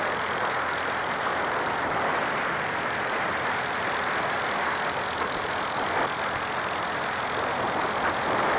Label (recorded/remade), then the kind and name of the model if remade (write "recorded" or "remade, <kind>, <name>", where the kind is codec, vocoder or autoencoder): recorded